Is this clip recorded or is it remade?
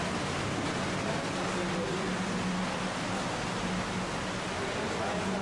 recorded